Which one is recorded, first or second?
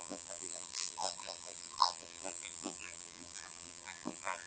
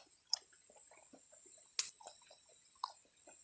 second